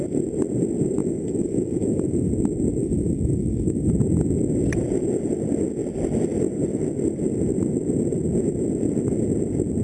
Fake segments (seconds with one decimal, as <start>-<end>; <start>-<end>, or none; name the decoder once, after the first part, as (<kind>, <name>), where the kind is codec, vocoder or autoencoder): 1.0-2.3 (autoencoder, DAC-VAE); 2.8-3.9